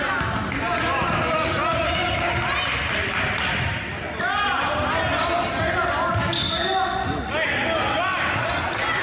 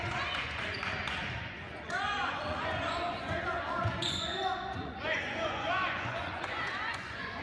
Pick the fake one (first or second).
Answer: second